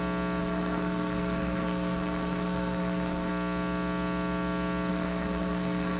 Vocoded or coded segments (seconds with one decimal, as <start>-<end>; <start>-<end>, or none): 0.4-3.3; 4.9-6.0

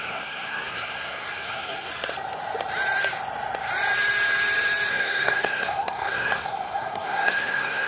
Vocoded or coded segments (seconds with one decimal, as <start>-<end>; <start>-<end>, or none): 0.0-1.9; 4.9-7.9

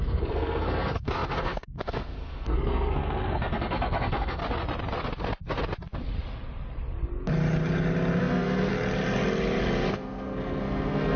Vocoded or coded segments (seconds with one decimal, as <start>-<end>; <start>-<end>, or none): 0.0-4.4; 8.2-8.7; 9.9-11.2

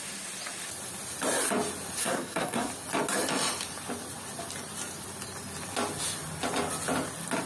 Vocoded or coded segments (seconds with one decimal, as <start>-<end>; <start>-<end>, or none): 2.0-2.7

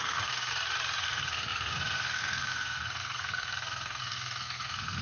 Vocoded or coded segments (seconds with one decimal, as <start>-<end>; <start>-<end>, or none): 0.0-0.5; 1.0-5.0

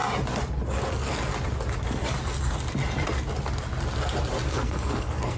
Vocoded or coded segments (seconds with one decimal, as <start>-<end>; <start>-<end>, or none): 0.9-1.3; 4.5-5.4